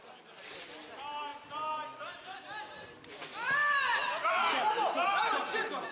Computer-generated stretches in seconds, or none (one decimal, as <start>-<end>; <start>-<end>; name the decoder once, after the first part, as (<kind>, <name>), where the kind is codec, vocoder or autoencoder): 1.3-2.4 (vocoder, BigVGAN v2); 3.6-5.2